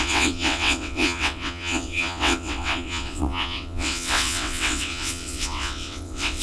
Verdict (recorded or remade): remade